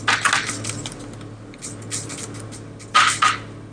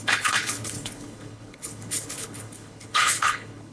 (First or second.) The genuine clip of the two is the first